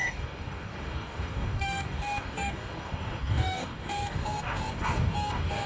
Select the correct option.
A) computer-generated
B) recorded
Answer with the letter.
A